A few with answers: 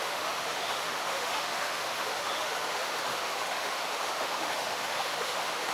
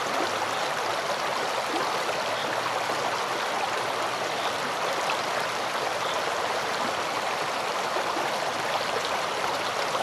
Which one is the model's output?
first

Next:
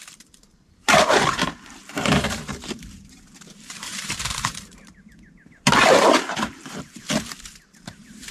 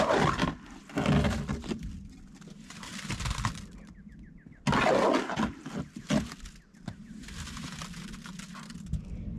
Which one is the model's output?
first